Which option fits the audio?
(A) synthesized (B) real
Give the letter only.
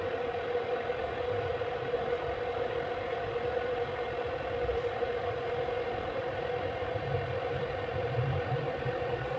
A